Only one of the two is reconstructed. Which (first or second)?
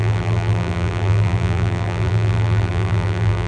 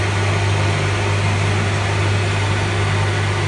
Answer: first